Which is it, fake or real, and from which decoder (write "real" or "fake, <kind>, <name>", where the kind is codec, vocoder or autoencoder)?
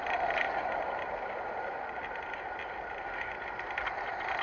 real